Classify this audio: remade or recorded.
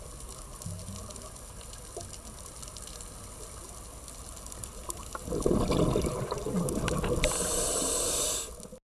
recorded